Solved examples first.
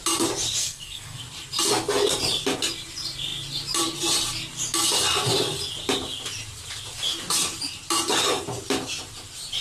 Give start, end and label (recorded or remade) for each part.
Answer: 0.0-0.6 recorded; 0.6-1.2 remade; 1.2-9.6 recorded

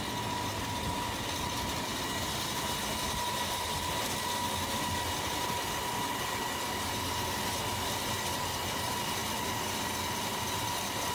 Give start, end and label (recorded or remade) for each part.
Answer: 0.0-11.1 recorded